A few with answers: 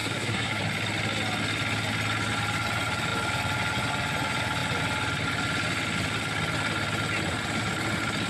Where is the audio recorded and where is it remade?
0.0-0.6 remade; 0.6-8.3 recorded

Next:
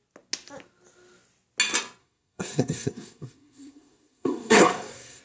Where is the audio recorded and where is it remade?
0.0-2.0 recorded; 2.0-5.2 remade